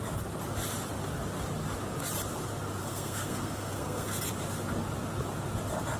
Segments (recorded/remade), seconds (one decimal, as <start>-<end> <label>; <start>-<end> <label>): 0.0-2.8 recorded; 2.8-4.2 remade; 4.2-6.0 recorded